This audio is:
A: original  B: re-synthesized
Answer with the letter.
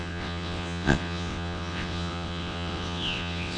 B